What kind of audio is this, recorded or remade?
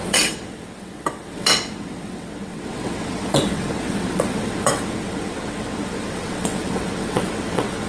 remade